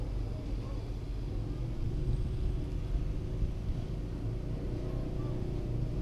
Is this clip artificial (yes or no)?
no